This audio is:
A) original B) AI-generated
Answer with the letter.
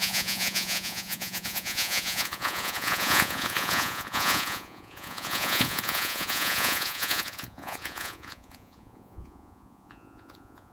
B